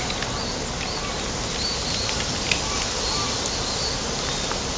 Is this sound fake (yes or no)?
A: no